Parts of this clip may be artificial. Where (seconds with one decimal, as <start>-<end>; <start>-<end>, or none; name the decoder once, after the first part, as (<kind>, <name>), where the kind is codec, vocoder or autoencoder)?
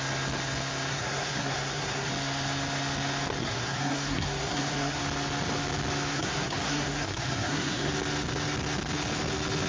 0.9-2.1 (codec, SNAC); 3.4-5.0; 6.1-7.9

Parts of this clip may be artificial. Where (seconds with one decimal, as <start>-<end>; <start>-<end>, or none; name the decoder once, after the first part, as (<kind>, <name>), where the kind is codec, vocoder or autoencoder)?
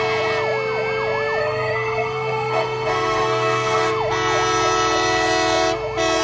1.4-3.9 (codec, SNAC)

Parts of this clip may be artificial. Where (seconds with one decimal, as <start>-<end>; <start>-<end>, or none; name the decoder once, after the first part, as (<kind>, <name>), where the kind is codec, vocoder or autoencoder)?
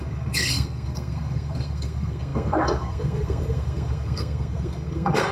0.0-5.3 (codec, SNAC)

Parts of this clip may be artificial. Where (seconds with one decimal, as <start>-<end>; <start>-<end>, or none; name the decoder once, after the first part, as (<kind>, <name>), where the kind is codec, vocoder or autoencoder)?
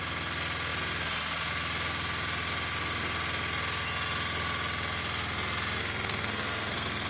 5.8-7.1 (codec, SNAC)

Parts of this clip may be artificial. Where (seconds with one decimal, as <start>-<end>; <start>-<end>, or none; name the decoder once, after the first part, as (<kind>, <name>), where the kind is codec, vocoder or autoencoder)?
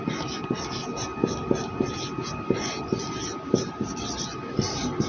none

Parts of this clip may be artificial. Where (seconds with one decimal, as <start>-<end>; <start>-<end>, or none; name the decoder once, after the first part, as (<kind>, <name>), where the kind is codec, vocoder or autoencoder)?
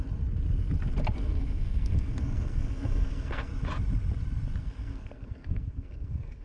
1.2-3.5 (codec, SNAC); 4.6-6.4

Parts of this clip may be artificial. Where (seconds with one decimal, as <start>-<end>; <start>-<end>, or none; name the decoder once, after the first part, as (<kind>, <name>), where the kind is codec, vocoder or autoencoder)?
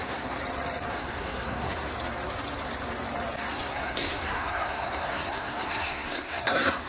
0.0-0.4 (codec, SNAC); 0.9-1.9; 3.5-6.9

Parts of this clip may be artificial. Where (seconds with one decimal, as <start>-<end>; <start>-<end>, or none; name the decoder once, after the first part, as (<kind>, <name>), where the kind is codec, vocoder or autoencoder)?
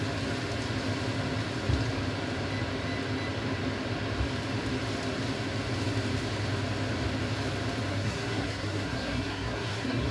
7.9-10.1 (codec, SNAC)